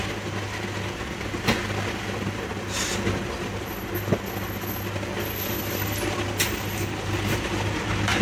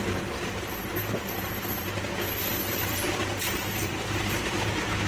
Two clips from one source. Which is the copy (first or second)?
second